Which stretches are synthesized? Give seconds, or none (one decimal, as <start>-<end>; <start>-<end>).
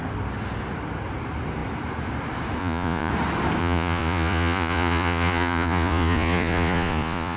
2.6-3.1; 3.6-7.4